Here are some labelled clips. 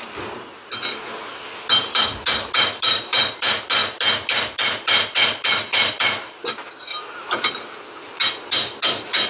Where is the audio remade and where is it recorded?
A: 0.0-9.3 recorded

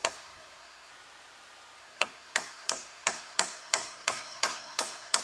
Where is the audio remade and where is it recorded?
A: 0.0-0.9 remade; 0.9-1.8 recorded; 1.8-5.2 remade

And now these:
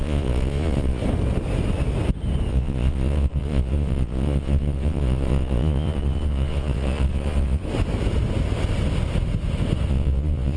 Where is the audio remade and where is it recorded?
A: 0.0-1.0 remade; 1.0-2.5 recorded; 2.5-7.6 remade; 7.6-9.9 recorded; 9.9-10.6 remade

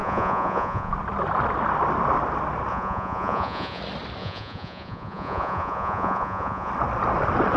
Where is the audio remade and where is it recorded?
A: 0.0-0.9 remade; 0.9-2.7 recorded; 2.7-3.8 remade; 3.8-4.2 recorded; 4.2-6.7 remade; 6.7-7.6 recorded

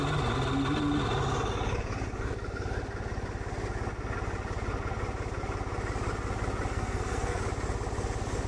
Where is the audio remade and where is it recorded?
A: 0.0-6.7 recorded; 6.7-7.4 remade; 7.4-8.5 recorded

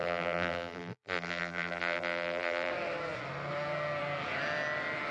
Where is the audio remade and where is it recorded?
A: 0.0-2.7 remade; 2.7-5.1 recorded

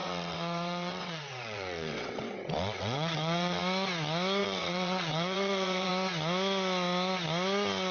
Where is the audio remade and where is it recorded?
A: 0.0-3.6 remade; 3.6-4.4 recorded; 4.4-5.9 remade; 5.9-7.9 recorded